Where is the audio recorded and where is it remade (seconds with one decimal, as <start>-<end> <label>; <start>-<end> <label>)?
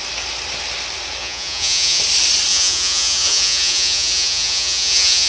0.0-1.2 recorded; 1.2-2.0 remade; 2.0-2.5 recorded; 2.5-5.3 remade